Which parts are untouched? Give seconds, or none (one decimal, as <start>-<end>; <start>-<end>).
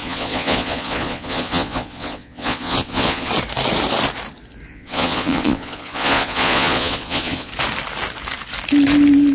3.3-4.7; 7.5-9.3